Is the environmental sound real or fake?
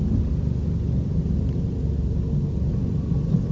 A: real